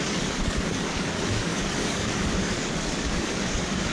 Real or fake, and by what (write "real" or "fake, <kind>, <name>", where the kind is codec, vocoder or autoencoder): fake, codec, DAC